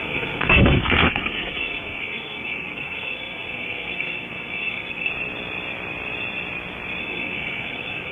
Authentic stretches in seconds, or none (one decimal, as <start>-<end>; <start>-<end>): 5.1-7.0